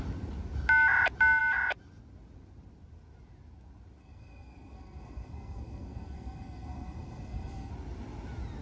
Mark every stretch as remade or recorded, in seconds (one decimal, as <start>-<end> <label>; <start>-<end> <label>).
0.0-4.0 recorded; 4.0-7.7 remade; 7.7-8.6 recorded